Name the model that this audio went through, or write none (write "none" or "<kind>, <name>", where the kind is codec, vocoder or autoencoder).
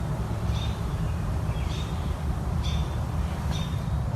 vocoder, BigVGAN v2